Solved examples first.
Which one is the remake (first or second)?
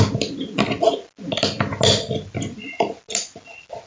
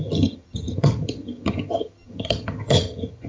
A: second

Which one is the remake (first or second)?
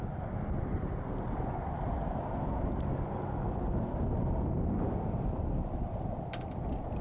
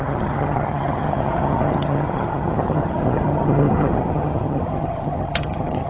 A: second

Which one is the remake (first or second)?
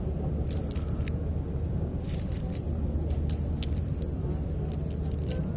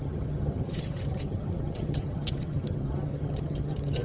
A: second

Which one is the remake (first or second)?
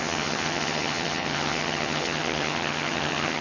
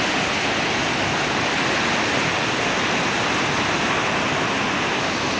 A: first